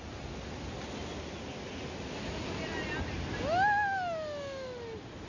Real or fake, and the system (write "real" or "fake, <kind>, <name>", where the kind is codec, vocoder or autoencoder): real